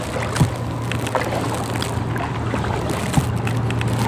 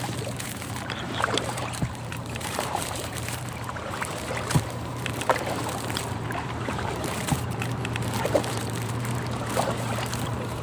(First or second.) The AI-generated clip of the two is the second